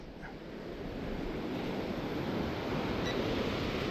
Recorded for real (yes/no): no